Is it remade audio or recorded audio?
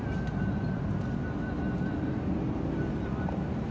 recorded